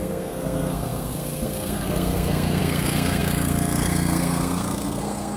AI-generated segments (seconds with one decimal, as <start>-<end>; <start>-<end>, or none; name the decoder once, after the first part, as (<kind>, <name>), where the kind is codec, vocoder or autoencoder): 0.0-5.4 (codec, SNAC)